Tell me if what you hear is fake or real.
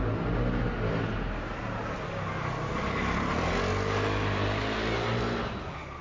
real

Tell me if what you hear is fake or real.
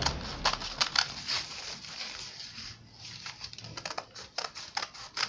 real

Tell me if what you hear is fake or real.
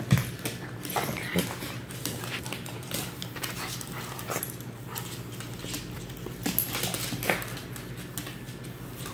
real